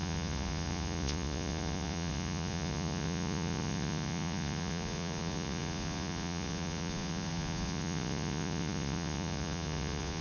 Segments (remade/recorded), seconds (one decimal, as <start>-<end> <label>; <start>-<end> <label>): 0.0-10.2 remade